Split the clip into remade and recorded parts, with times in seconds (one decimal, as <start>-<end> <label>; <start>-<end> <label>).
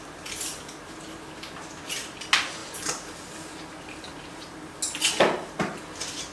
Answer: 0.0-6.3 recorded